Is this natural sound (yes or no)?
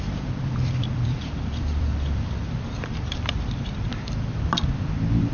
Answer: no